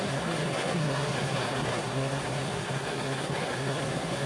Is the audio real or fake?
fake